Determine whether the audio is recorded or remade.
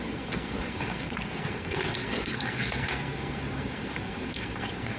remade